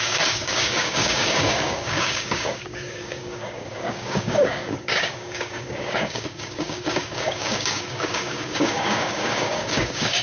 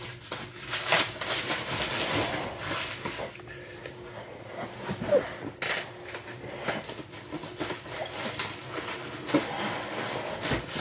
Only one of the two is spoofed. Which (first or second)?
first